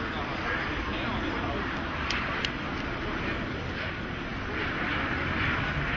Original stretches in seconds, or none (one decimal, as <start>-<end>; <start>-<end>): 0.0-6.0